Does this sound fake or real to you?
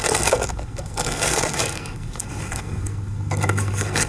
fake